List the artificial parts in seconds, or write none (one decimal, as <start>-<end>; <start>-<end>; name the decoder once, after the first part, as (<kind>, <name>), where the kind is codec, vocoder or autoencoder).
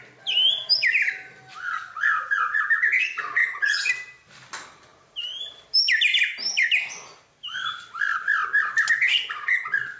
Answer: 1.5-2.6 (vocoder, Vocos); 3.4-3.9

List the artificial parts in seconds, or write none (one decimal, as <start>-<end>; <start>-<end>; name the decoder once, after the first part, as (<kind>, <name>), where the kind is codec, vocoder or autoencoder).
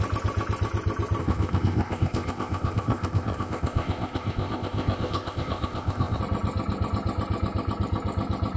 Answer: 1.2-6.2 (codec, ZipCodec)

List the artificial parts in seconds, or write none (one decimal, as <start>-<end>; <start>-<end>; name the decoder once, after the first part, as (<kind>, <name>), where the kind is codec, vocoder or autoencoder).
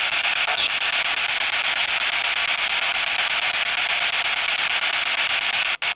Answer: none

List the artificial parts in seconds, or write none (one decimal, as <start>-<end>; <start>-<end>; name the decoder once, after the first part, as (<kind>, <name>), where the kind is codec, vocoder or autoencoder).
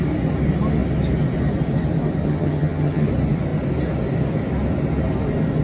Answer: 2.2-3.1 (vocoder, HiFi-GAN)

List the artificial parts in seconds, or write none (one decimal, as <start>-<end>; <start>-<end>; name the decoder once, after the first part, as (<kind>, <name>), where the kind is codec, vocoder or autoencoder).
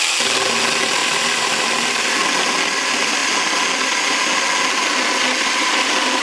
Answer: 1.0-2.1 (vocoder, BigVGAN v2)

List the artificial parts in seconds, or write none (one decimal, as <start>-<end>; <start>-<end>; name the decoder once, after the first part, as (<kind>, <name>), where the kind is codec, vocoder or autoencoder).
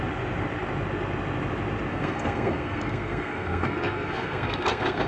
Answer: 1.9-5.1 (codec, SNAC)